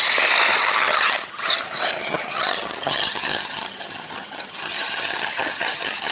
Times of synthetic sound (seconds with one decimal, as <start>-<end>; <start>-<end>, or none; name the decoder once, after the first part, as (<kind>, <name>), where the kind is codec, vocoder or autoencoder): 0.6-1.6 (vocoder, HiFi-GAN); 2.0-6.1